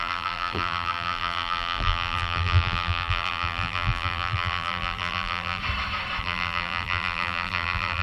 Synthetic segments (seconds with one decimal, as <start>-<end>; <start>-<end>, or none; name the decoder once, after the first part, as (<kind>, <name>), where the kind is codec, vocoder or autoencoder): 0.0-5.6 (vocoder, BigVGAN v2); 6.2-8.0